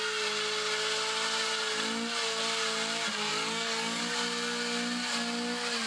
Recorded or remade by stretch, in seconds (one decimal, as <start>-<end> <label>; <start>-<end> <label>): 0.0-3.3 recorded; 3.3-4.0 remade; 4.0-5.9 recorded